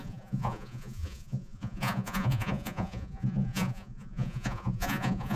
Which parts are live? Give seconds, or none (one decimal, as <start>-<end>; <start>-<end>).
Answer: none